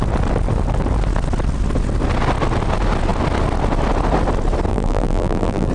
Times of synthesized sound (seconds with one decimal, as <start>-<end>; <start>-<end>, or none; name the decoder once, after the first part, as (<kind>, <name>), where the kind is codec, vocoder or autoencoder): 4.7-5.7 (vocoder, BigVGAN v2)